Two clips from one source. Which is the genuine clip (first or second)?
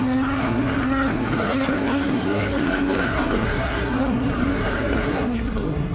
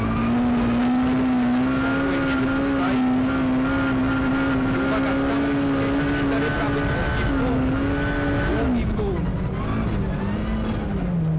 second